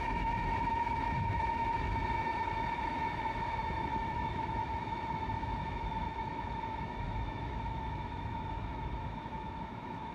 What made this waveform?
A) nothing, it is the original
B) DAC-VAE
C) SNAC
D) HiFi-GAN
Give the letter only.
B